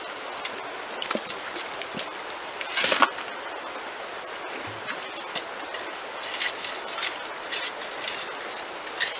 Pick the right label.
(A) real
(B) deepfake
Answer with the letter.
A